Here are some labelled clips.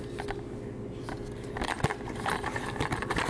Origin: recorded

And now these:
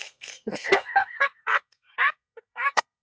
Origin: remade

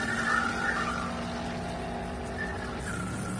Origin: recorded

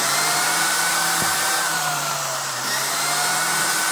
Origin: remade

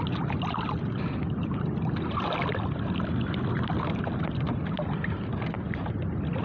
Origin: recorded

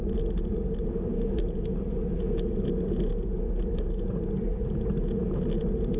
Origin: recorded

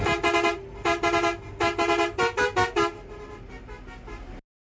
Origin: recorded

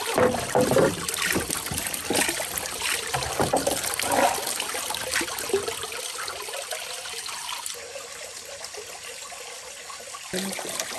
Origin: recorded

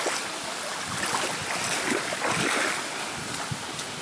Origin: recorded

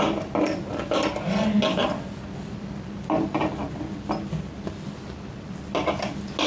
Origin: recorded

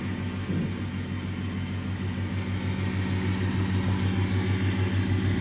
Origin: recorded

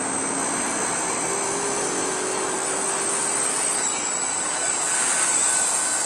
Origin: recorded